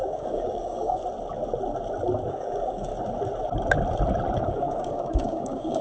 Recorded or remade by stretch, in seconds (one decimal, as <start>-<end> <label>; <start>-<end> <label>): 0.0-1.0 remade; 1.0-2.3 recorded; 2.3-2.9 remade; 2.9-4.4 recorded; 4.4-5.8 remade

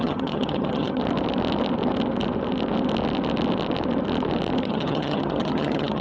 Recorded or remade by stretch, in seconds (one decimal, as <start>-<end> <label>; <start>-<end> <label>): 0.0-1.0 remade; 1.0-4.6 recorded; 4.6-6.0 remade

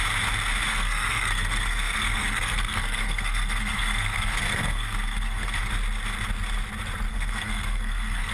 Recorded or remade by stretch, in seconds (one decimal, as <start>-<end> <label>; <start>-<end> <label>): 0.0-0.7 recorded; 0.7-5.7 remade; 5.7-7.1 recorded; 7.1-8.3 remade

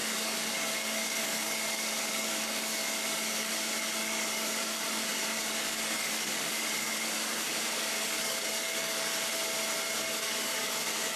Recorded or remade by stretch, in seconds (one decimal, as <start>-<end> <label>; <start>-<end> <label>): 0.0-9.1 remade; 9.1-10.0 recorded; 10.0-11.2 remade

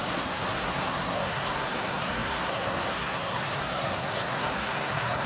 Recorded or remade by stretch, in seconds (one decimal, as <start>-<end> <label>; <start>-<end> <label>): 0.0-5.3 remade

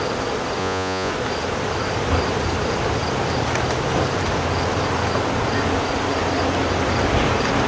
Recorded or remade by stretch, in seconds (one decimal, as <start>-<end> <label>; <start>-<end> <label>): 0.0-0.6 recorded; 0.6-1.1 remade; 1.1-7.7 recorded

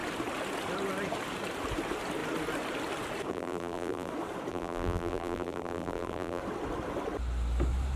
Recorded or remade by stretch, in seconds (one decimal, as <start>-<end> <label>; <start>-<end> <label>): 0.0-3.3 recorded; 3.3-4.1 remade; 4.1-4.5 recorded; 4.5-6.4 remade; 6.4-8.0 recorded

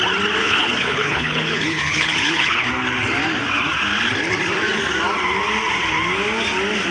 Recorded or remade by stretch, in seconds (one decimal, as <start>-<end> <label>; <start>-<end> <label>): 0.0-0.4 recorded; 0.4-2.7 remade; 2.7-6.9 recorded